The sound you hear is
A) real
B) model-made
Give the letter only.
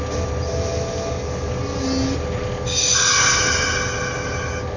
A